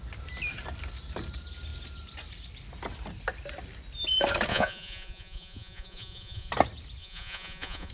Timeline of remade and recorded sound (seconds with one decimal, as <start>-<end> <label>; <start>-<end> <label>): 0.0-4.5 recorded; 4.5-6.5 remade; 6.5-7.0 recorded; 7.0-7.9 remade